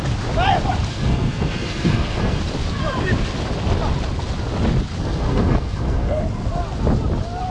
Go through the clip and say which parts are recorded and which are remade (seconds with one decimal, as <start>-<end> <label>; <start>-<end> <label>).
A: 0.0-0.9 recorded; 0.9-2.4 remade; 2.4-5.0 recorded; 5.0-6.2 remade; 6.2-7.5 recorded